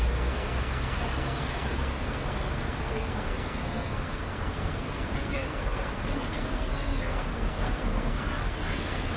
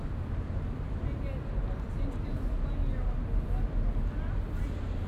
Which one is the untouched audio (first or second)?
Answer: second